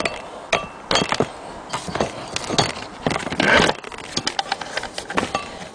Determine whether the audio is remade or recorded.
recorded